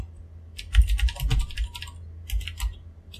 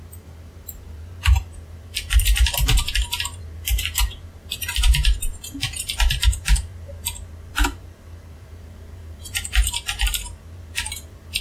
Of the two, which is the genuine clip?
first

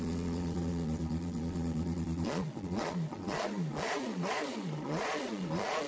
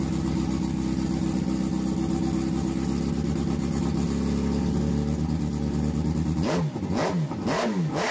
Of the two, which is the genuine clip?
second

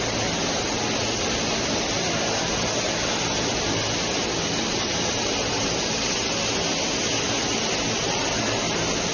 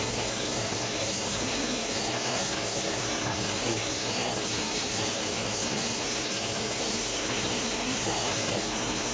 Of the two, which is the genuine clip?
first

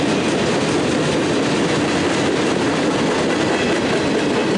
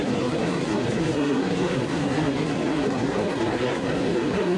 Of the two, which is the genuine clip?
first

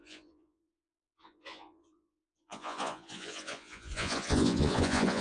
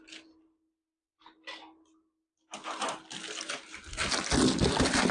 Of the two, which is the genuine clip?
second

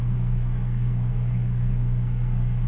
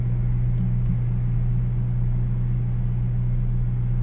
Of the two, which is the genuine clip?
second